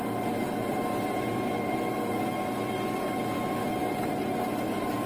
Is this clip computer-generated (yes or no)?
yes